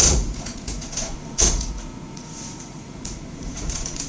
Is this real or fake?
fake